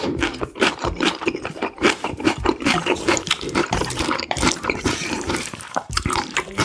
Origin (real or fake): fake